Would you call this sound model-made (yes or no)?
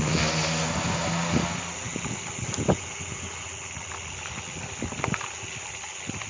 no